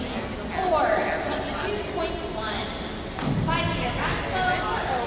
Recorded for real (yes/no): yes